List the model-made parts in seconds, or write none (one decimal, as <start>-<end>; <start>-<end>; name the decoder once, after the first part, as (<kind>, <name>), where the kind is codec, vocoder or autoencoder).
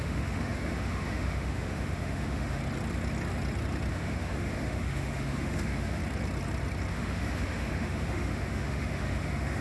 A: 0.0-2.6 (autoencoder, DAC-VAE); 3.9-6.0; 6.9-9.6